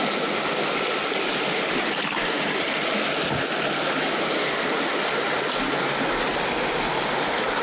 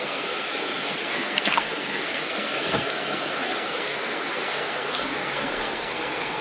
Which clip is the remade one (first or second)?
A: second